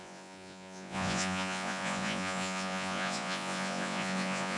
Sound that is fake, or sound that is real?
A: fake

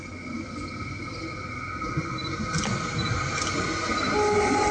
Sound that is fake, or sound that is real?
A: real